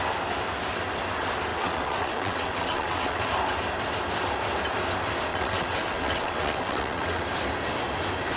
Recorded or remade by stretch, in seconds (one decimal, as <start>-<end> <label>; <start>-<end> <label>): 0.0-1.5 recorded; 1.5-3.3 remade; 3.3-5.3 recorded; 5.3-7.2 remade; 7.2-8.4 recorded